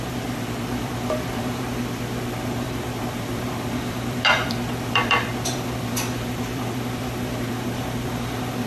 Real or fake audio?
fake